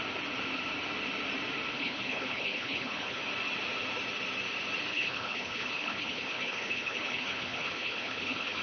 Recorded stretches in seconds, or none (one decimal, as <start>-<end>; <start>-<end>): 0.0-1.7; 3.2-4.9